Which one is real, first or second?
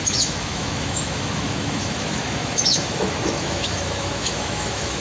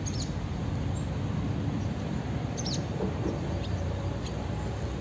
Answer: second